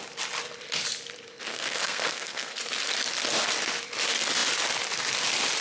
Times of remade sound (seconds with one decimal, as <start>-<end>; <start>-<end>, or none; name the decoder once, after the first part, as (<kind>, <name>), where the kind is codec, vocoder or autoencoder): 1.5-2.6 (codec, SNAC)